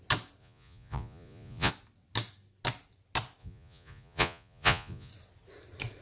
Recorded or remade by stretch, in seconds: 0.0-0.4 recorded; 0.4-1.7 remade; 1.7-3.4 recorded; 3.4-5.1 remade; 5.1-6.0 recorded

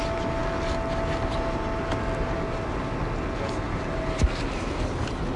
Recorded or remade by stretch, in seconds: 0.0-5.4 recorded

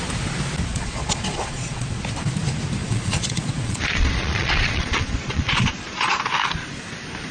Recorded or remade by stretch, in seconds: 0.0-0.7 recorded; 0.7-2.0 remade; 2.0-2.8 recorded; 2.8-6.2 remade; 6.2-7.3 recorded